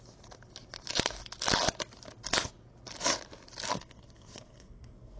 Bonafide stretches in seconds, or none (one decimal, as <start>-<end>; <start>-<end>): 0.0-3.7